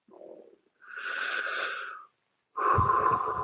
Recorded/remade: recorded